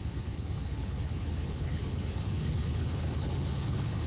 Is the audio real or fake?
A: fake